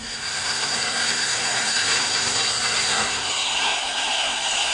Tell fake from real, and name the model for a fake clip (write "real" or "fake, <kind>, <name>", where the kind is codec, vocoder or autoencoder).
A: fake, codec, SNAC